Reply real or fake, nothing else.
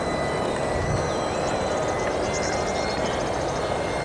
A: real